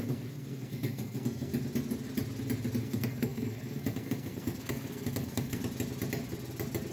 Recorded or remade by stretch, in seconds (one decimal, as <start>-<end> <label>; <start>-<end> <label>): 0.0-1.5 remade; 1.5-2.8 recorded; 2.8-5.6 remade; 5.6-6.9 recorded